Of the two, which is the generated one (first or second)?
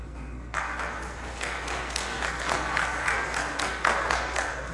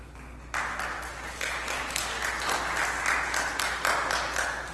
first